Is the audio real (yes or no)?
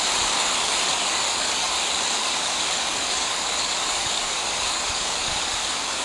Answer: no